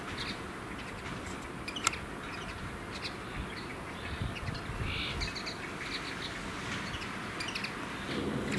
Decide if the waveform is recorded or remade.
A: recorded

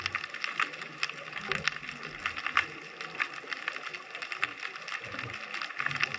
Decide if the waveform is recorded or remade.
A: recorded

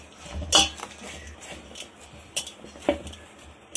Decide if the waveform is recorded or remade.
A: recorded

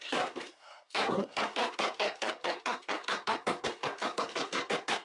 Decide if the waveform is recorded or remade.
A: remade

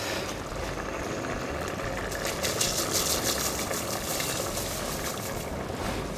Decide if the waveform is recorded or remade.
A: recorded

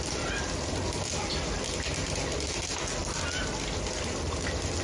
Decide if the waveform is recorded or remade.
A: recorded